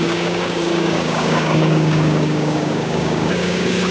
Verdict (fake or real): fake